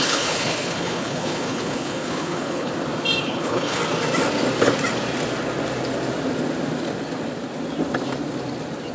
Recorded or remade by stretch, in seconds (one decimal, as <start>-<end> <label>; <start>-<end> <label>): 0.0-2.7 remade; 2.7-3.2 recorded; 3.2-3.8 remade; 3.8-8.9 recorded